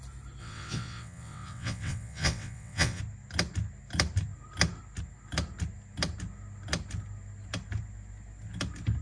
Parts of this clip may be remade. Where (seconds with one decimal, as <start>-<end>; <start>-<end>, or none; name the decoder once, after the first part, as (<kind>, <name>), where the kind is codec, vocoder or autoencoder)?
0.4-3.0 (vocoder, WaveNeXt)